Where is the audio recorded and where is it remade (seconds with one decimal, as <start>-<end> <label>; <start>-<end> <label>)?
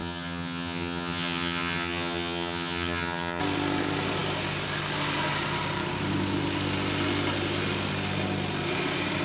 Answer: 0.0-3.4 remade; 3.4-9.2 recorded